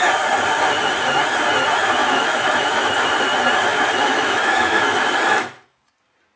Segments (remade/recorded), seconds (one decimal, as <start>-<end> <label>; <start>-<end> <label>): 0.0-2.0 recorded; 2.0-2.9 remade; 2.9-3.7 recorded; 3.7-5.8 remade; 5.8-6.4 recorded